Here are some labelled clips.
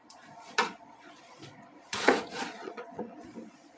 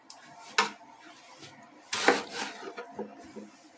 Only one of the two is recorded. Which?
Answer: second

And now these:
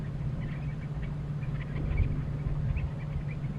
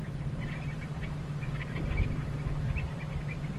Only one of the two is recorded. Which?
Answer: first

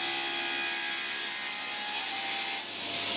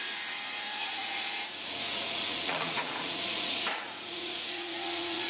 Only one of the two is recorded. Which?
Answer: first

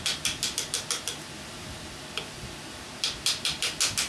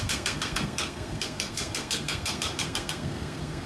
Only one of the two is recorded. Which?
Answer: first